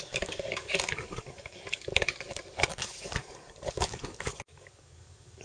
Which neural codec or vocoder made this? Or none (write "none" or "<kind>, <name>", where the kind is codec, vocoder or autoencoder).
codec, DAC